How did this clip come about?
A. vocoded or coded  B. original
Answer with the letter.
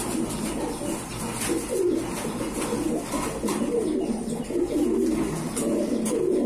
B